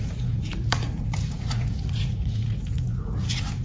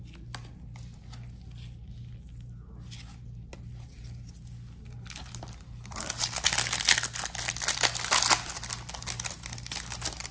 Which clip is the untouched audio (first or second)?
second